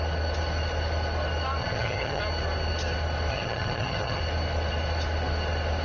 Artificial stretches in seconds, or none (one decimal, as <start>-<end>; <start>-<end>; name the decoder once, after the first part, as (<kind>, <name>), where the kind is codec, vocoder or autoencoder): 1.6-2.2 (vocoder, HiFi-GAN); 3.3-4.2